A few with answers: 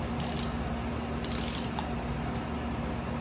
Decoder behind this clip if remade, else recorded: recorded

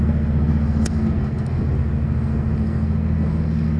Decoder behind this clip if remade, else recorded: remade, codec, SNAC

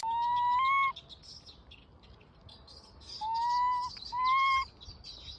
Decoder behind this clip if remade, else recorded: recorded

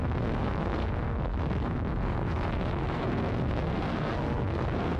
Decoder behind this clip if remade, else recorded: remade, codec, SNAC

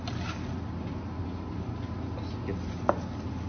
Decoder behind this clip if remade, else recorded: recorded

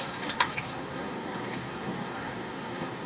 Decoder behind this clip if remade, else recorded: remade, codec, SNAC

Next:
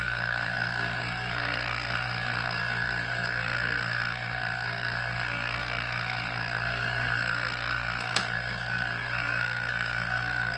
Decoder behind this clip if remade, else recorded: remade, codec, SNAC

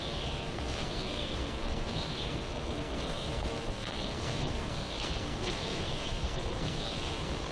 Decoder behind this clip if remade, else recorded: remade, codec, SNAC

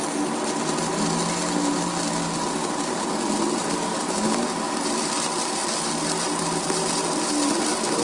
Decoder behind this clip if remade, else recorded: recorded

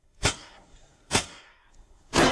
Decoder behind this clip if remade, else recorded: remade, codec, SNAC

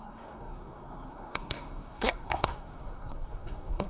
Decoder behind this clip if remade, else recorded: remade, codec, SNAC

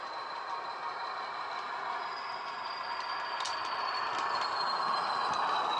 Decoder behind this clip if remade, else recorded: recorded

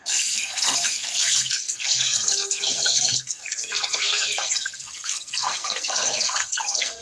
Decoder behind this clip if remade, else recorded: remade, codec, SNAC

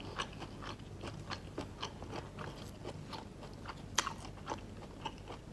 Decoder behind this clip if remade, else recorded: recorded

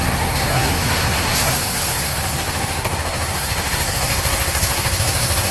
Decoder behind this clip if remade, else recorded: remade, codec, SNAC